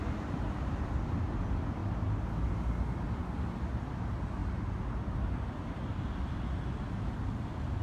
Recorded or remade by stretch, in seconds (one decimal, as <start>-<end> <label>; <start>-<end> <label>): 0.0-7.8 recorded